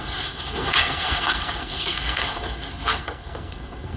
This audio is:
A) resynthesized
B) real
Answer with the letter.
A